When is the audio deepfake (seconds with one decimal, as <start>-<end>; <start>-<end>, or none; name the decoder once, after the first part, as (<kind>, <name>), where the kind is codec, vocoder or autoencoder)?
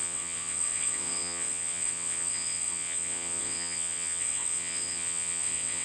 0.0-5.8 (vocoder, WaveNeXt)